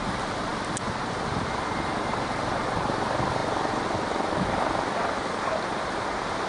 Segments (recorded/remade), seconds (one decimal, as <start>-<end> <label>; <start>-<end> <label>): 0.0-0.5 recorded; 0.5-2.6 remade; 2.6-3.4 recorded; 3.4-4.9 remade; 4.9-6.5 recorded